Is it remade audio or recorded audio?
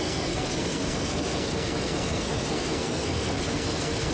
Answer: remade